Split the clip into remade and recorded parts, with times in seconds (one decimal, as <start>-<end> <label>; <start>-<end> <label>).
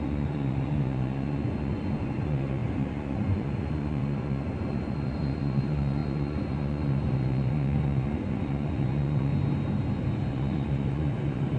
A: 0.0-9.3 remade; 9.3-10.3 recorded; 10.3-11.6 remade